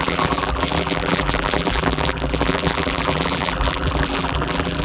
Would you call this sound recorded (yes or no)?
no